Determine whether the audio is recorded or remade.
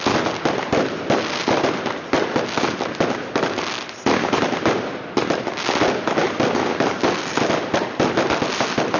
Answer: recorded